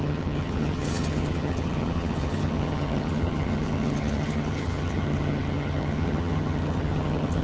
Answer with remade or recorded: remade